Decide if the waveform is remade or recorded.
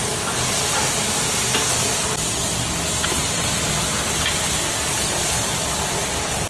recorded